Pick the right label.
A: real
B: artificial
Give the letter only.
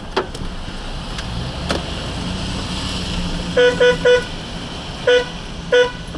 A